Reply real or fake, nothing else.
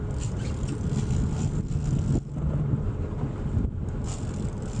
real